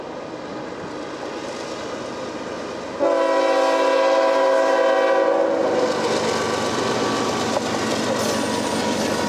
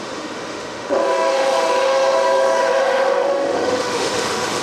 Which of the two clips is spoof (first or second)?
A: second